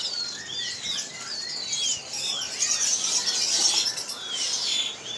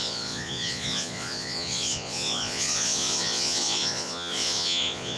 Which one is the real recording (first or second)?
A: first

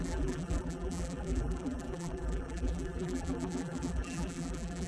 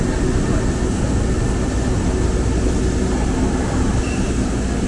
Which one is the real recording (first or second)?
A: second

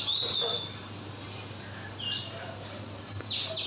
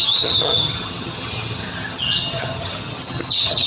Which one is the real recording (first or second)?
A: first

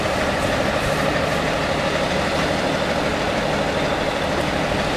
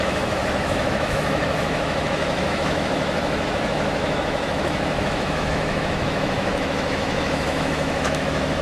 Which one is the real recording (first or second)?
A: first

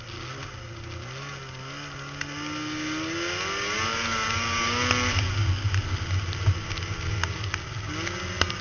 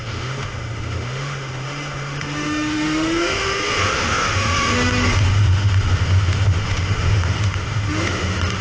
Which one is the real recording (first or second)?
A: first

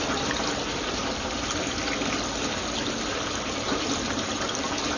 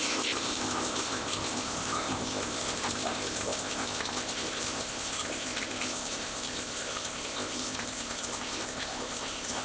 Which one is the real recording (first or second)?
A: first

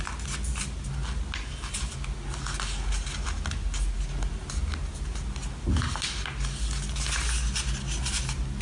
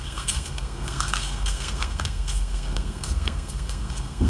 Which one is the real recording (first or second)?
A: first